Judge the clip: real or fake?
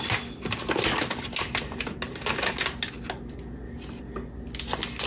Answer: real